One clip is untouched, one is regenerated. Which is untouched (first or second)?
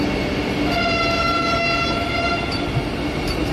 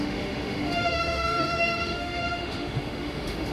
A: first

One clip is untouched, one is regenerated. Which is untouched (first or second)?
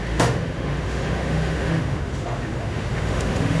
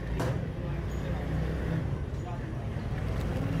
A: second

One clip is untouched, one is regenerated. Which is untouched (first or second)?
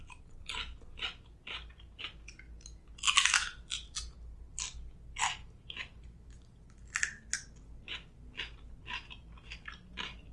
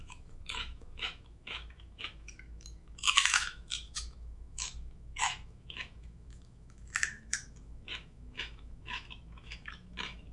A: first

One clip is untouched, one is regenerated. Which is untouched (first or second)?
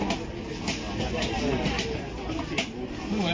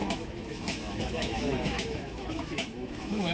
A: first